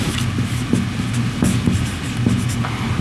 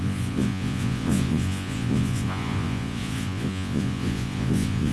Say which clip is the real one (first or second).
first